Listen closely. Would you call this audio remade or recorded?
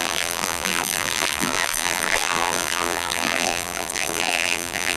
remade